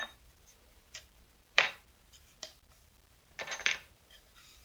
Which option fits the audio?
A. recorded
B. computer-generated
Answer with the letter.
B